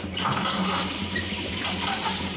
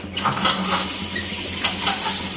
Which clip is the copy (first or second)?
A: first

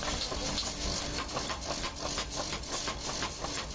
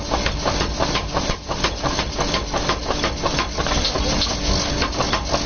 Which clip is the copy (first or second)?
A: first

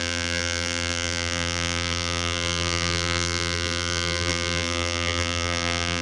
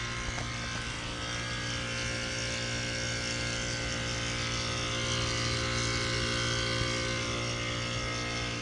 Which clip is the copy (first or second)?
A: first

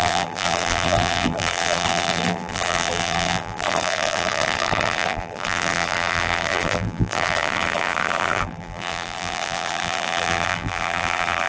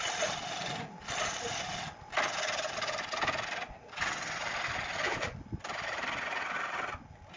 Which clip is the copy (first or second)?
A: first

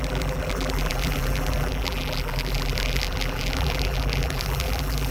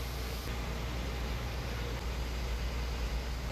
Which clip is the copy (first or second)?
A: first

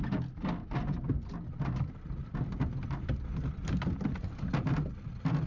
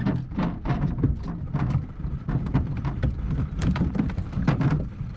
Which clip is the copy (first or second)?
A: second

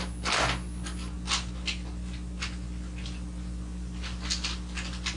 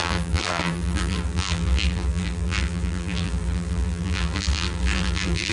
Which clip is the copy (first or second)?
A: second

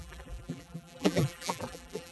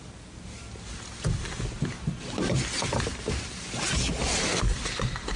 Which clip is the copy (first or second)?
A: first